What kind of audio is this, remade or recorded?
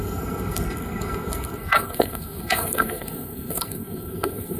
remade